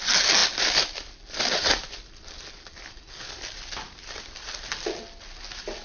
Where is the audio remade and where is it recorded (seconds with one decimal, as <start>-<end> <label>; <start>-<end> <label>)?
0.0-5.8 recorded